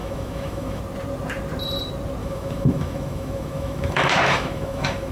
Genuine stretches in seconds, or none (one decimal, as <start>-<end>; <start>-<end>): 0.8-2.2

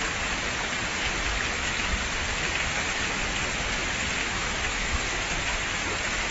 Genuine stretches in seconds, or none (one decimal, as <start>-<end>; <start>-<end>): 0.0-4.2; 4.9-6.3

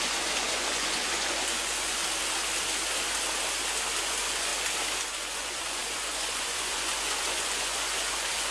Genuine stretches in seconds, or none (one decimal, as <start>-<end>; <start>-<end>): 2.0-4.0; 4.5-5.0

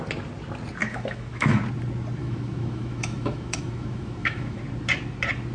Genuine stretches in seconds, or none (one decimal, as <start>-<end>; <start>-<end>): 0.0-0.8; 1.6-2.2; 4.6-5.5

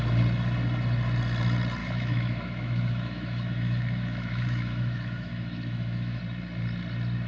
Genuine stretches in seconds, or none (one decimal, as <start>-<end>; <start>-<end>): 0.0-1.8; 6.2-7.3

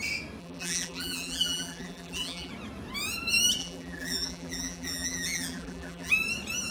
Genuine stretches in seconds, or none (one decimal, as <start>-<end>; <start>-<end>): 0.0-0.4; 2.5-3.6; 6.1-6.7

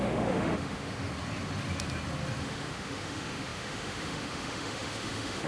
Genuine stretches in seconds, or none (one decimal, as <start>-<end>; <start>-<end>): 1.1-2.4

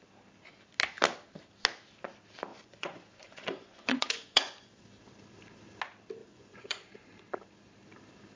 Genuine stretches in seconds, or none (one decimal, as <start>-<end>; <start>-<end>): 0.0-2.5; 4.8-6.2; 7.2-8.4